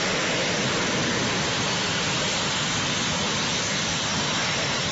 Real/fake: real